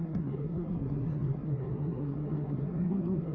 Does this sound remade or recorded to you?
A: remade